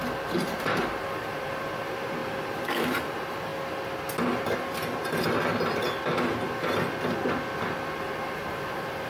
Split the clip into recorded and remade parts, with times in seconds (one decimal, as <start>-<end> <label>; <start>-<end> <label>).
0.0-3.5 remade; 3.5-8.0 recorded; 8.0-9.1 remade